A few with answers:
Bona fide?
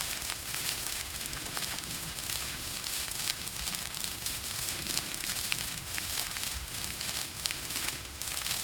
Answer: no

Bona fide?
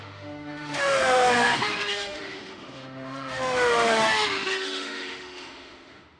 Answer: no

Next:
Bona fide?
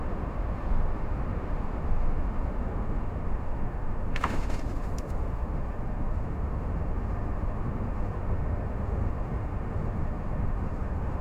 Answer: no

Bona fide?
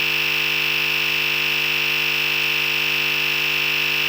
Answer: yes